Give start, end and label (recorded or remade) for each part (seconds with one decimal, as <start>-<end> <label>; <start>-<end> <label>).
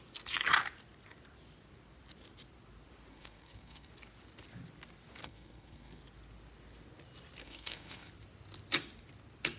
0.0-3.1 recorded; 3.1-3.9 remade; 3.9-5.2 recorded; 5.2-6.0 remade; 6.0-7.4 recorded; 7.4-8.1 remade; 8.1-9.6 recorded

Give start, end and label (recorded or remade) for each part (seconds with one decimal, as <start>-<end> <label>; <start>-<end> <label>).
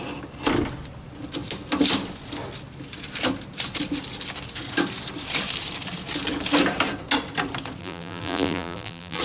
0.0-7.8 recorded; 7.8-9.2 remade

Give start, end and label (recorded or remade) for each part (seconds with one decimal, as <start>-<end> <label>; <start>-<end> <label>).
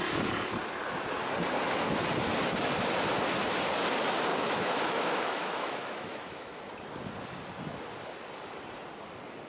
0.0-4.3 recorded; 4.3-6.6 remade; 6.6-9.5 recorded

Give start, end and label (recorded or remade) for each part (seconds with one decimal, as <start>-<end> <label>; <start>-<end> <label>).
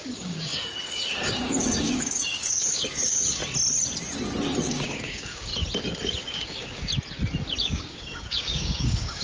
0.0-3.4 remade; 3.4-4.6 recorded; 4.6-5.5 remade; 5.5-6.3 recorded; 6.3-6.9 remade; 6.9-7.6 recorded; 7.6-9.2 remade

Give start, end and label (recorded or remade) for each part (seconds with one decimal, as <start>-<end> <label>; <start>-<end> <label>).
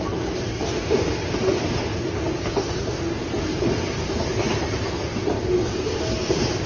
0.0-6.7 recorded